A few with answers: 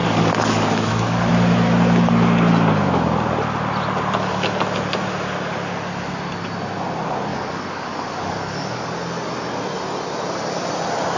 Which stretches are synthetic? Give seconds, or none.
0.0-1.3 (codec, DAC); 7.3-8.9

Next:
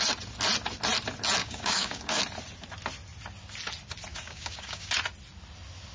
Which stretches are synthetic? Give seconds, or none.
1.4-2.2 (codec, DAC); 4.1-4.9

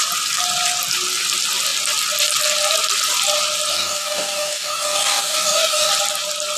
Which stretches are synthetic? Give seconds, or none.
3.7-5.9 (codec, DAC)

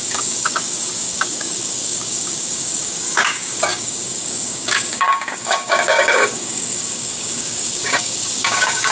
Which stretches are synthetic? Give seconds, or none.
0.0-8.9 (codec, DAC)